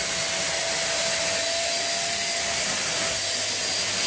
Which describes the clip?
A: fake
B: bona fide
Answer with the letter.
B